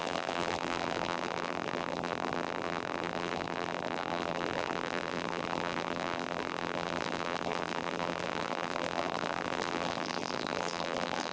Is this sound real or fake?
fake